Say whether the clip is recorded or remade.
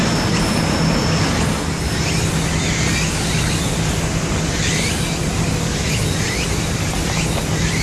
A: recorded